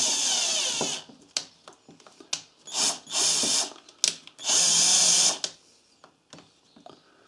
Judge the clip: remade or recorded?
recorded